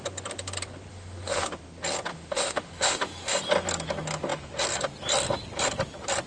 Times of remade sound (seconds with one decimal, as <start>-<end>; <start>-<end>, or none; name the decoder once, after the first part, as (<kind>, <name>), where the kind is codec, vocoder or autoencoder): 0.9-1.5 (autoencoder, DAC-VAE); 2.1-3.4